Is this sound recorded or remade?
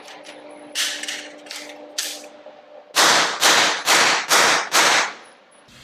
recorded